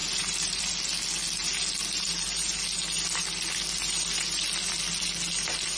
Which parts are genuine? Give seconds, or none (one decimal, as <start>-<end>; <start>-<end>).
0.6-5.8